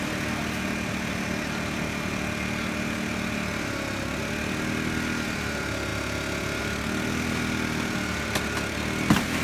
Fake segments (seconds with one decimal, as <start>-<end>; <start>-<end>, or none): none